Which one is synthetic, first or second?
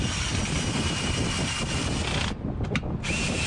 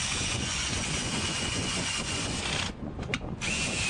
second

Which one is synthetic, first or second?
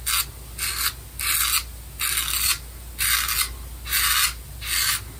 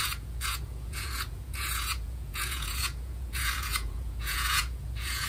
second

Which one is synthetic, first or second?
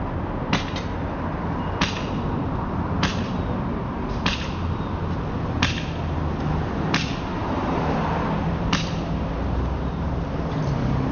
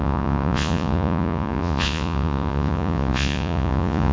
second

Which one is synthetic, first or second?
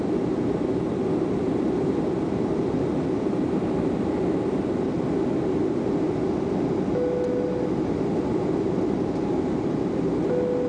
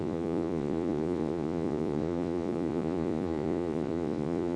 second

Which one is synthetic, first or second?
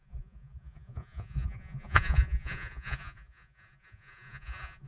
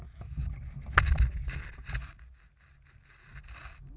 first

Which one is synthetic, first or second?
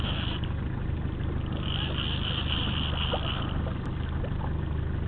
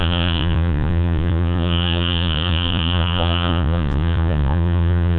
second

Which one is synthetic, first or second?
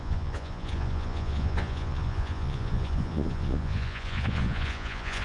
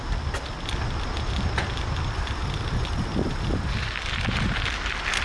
first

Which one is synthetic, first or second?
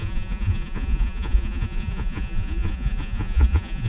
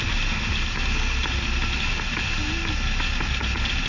first